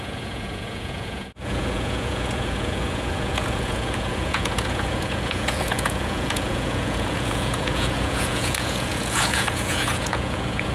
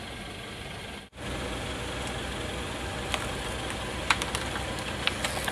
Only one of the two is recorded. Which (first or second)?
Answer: second